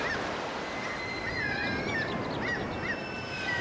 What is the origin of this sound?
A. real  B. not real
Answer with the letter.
A